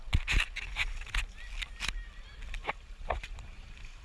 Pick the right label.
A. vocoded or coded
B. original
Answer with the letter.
B